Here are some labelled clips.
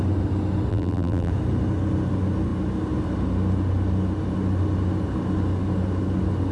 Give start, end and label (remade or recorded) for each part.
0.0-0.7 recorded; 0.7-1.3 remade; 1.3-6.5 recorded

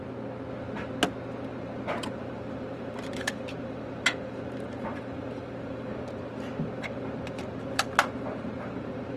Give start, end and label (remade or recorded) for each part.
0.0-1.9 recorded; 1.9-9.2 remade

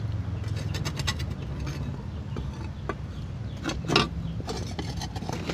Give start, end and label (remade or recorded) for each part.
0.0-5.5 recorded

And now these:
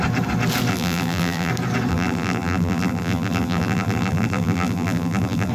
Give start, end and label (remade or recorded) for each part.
0.0-0.7 recorded; 0.7-1.5 remade; 1.5-1.9 recorded; 1.9-5.5 remade